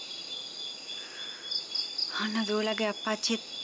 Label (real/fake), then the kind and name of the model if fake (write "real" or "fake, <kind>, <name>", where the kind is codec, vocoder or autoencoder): real